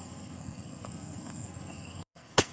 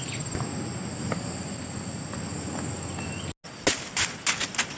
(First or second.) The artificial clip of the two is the first